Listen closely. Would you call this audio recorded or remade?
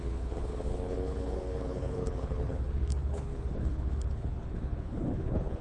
remade